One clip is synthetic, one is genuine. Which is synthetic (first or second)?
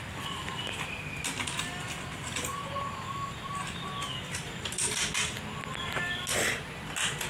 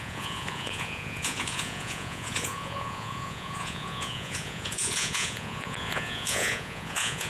second